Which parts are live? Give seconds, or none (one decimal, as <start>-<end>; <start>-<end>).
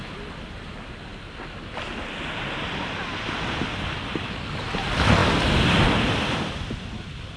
0.0-7.4